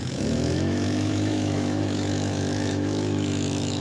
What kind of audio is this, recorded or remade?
remade